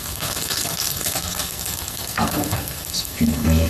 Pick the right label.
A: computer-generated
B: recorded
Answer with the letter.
A